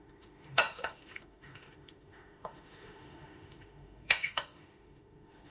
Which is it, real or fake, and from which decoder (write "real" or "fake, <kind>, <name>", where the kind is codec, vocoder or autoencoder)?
fake, autoencoder, DAC-VAE